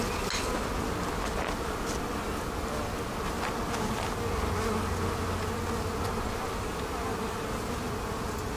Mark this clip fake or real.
real